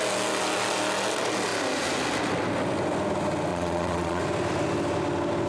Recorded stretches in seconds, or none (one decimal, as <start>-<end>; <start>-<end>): 0.0-3.5; 4.2-5.5